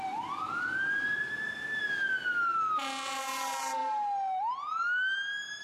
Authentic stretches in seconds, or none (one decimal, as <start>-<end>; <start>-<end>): 0.0-5.6